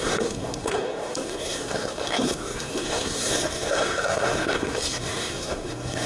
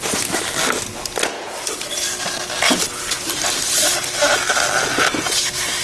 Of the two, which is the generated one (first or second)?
first